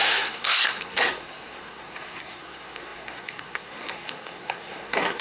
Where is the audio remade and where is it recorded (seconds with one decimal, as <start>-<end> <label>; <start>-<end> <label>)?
0.0-5.2 remade

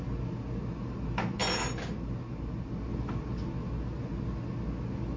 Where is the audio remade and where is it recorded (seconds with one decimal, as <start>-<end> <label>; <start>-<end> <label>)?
0.0-5.2 recorded

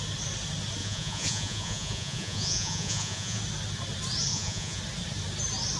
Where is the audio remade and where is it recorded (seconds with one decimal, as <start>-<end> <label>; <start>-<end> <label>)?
0.0-0.8 recorded; 0.8-3.4 remade; 3.4-4.3 recorded; 4.3-4.8 remade; 4.8-5.8 recorded

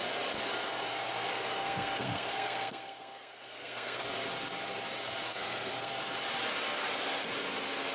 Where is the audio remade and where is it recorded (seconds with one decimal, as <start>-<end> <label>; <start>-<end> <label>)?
0.0-1.3 recorded; 1.3-4.0 remade; 4.0-5.3 recorded; 5.3-6.1 remade; 6.1-7.9 recorded

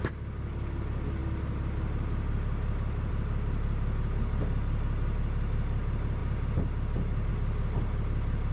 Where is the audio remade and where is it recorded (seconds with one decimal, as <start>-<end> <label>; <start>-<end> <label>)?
0.0-8.5 recorded